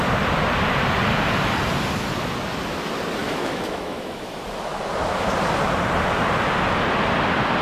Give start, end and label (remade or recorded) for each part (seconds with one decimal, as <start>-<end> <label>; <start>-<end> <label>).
0.0-3.2 recorded; 3.2-4.4 remade; 4.4-7.6 recorded

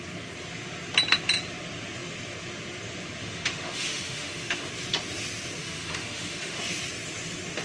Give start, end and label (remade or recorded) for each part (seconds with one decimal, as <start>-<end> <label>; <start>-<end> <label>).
0.0-3.2 recorded; 3.2-4.7 remade; 4.7-5.6 recorded; 5.6-6.6 remade; 6.6-7.6 recorded

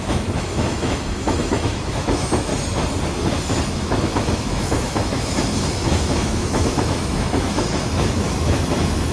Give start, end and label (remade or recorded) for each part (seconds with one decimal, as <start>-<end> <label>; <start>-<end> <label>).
0.0-2.5 remade; 2.5-3.7 recorded; 3.7-9.1 remade

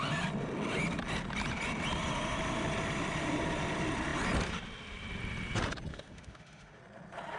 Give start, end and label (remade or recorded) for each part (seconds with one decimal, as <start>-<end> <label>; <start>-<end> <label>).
0.0-5.9 recorded; 5.9-6.8 remade; 6.8-7.4 recorded

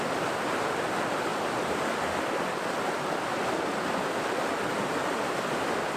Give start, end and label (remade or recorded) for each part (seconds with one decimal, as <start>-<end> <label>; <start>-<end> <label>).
0.0-6.0 recorded

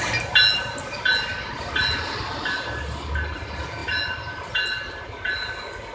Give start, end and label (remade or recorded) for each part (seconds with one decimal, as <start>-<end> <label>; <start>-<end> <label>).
0.0-5.9 recorded